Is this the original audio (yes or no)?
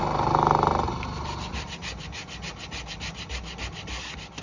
yes